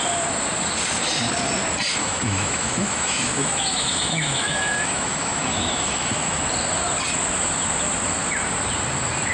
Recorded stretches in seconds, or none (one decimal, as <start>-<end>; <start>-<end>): 0.0-2.0; 6.4-9.3